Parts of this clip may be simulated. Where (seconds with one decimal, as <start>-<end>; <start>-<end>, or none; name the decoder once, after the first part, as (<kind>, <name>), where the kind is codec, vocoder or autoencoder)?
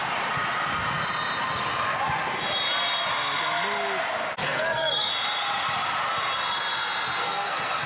4.4-5.1 (codec, SNAC); 7.2-7.9